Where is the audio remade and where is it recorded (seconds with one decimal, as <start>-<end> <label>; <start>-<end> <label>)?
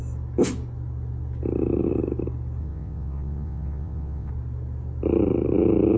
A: 0.0-2.6 recorded; 2.6-4.3 remade; 4.3-6.0 recorded